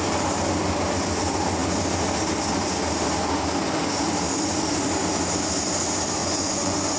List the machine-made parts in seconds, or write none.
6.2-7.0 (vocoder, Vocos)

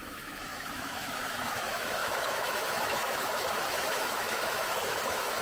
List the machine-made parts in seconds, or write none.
0.0-5.4 (autoencoder, DAC-VAE)

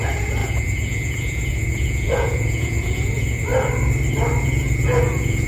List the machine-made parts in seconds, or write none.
0.0-3.5 (vocoder, Vocos); 4.4-5.5

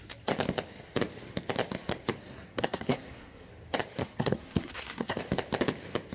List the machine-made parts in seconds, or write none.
2.2-3.5 (codec, SNAC); 4.0-5.2

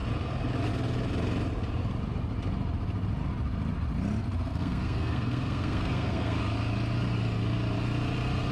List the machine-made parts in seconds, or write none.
4.5-6.4 (codec, SNAC)

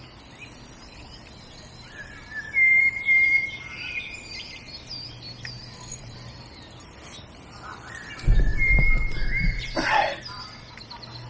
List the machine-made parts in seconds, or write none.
2.8-6.6 (vocoder, BigVGAN v2); 8.5-10.9

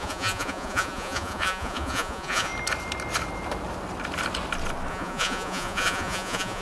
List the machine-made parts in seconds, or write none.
0.0-2.5 (vocoder, Vocos); 4.9-6.6